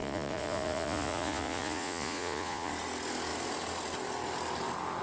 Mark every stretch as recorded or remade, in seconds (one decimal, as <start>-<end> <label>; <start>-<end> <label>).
0.0-2.7 remade; 2.7-5.0 recorded